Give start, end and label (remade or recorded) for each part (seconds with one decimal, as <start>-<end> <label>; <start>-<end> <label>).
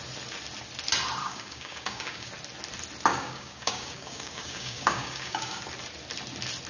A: 0.0-1.2 recorded; 1.2-2.3 remade; 2.3-3.1 recorded; 3.1-5.6 remade; 5.6-6.7 recorded